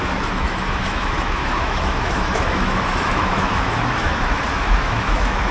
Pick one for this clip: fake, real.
fake